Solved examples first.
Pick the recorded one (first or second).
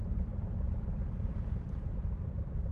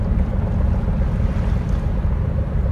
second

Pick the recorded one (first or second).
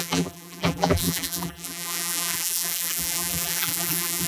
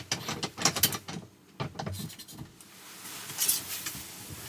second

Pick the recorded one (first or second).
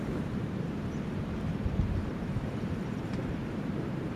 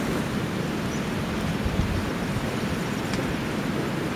second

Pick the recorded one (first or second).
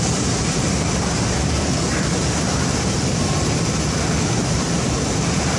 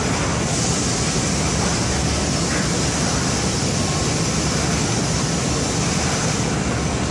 second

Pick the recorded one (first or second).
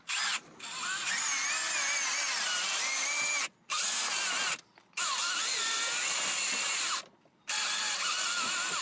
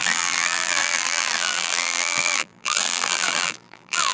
first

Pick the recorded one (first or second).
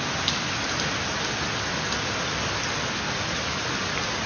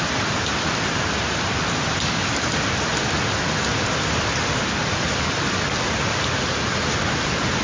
first